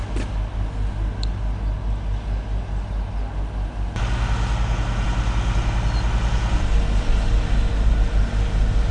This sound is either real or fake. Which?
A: real